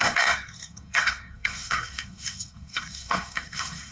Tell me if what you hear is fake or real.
fake